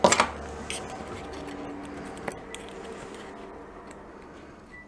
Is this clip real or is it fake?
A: real